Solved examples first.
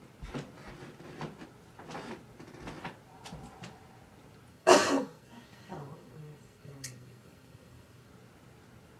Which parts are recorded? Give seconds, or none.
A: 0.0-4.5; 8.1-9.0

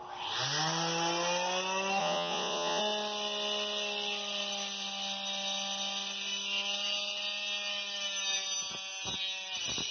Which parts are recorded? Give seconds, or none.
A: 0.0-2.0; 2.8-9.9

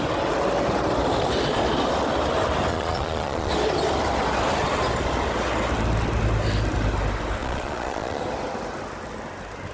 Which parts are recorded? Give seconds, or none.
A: 0.0-2.7; 3.5-7.4; 8.2-9.7